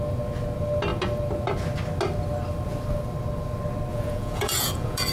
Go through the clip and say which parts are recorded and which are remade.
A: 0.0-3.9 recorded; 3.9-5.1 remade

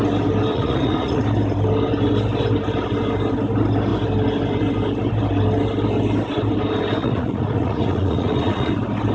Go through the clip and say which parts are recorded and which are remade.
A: 0.0-0.5 recorded; 0.5-1.2 remade; 1.2-7.0 recorded; 7.0-8.7 remade; 8.7-9.1 recorded